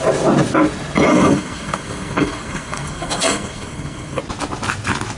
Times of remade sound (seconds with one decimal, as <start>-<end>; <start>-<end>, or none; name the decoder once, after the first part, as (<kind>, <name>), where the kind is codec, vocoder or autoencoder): 1.1-4.2 (codec, SNAC)